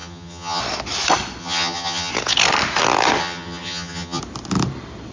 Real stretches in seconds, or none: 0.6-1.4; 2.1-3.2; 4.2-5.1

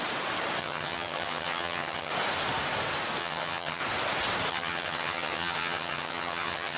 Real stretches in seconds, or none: 0.0-0.6; 2.1-3.2; 3.8-4.5

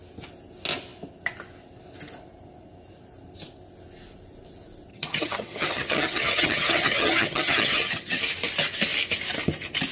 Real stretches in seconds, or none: 0.0-4.9; 8.2-9.9

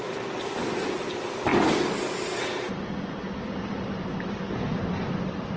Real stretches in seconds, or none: 0.0-5.6

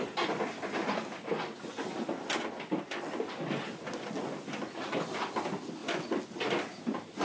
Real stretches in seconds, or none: 0.0-7.2